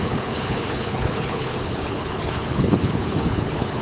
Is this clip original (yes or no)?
no